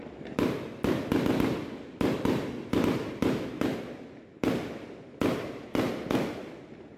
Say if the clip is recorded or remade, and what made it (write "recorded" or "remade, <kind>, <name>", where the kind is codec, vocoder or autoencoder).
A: recorded